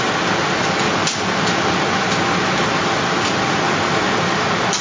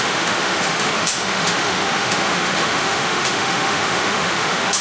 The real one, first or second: first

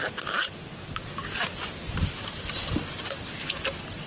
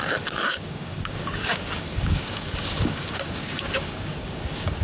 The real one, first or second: first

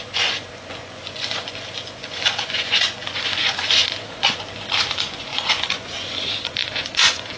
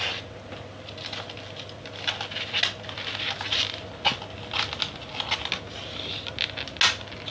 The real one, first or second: second